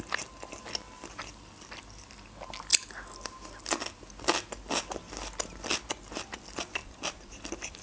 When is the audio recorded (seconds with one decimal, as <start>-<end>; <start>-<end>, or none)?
0.0-7.8